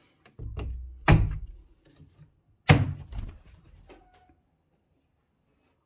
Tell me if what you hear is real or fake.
real